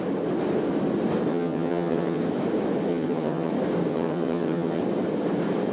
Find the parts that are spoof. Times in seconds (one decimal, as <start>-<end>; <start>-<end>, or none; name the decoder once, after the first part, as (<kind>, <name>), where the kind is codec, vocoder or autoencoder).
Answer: 1.3-2.2 (vocoder, HiFi-GAN); 2.9-3.5; 3.9-4.8